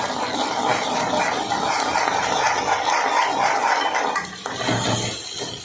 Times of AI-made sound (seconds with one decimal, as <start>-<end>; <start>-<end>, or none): none